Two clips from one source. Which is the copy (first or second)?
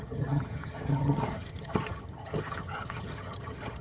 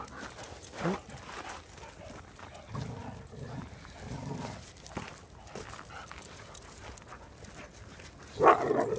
first